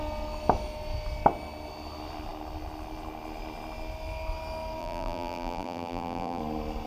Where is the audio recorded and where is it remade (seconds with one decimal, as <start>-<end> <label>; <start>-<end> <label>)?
0.0-4.8 recorded; 4.8-6.4 remade; 6.4-6.9 recorded